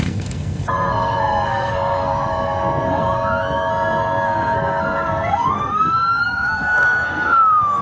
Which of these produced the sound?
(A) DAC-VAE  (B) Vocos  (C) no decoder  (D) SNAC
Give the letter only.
D